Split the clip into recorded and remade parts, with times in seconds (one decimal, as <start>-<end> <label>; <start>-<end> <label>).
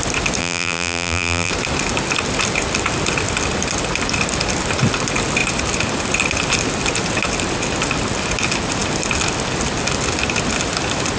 0.0-0.4 recorded; 0.4-1.5 remade; 1.5-11.2 recorded